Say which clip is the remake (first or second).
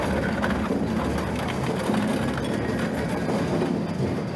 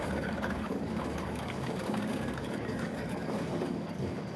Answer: second